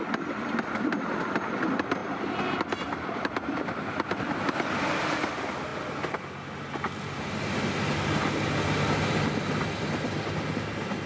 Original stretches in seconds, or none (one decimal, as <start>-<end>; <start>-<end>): 0.0-11.1